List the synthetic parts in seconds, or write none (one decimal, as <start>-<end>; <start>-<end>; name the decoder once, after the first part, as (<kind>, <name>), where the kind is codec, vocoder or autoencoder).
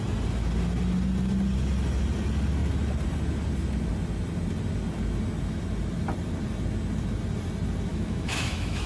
7.9-8.9 (autoencoder, DAC-VAE)